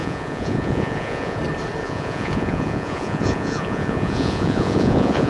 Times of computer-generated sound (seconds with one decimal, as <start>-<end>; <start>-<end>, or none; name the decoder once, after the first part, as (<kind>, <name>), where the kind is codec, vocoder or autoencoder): 0.0-1.4 (vocoder, Vocos); 1.8-5.3